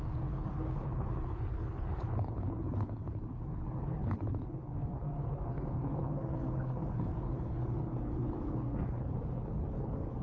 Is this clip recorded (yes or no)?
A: no